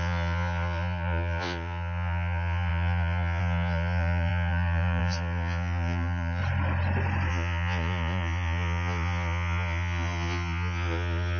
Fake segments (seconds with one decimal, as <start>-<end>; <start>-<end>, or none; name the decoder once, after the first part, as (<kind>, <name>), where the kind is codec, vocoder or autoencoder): 0.0-6.4 (vocoder, Vocos); 7.3-11.4